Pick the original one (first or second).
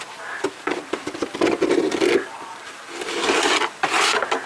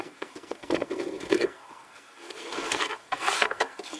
first